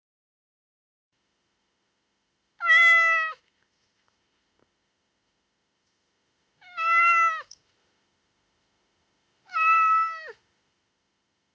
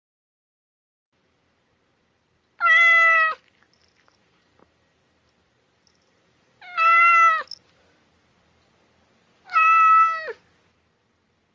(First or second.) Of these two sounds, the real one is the second